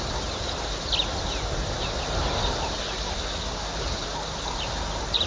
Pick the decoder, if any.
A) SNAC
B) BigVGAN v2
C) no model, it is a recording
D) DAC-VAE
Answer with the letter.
C